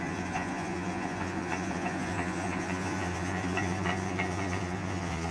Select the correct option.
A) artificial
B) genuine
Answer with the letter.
A